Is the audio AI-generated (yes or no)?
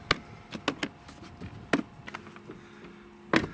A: no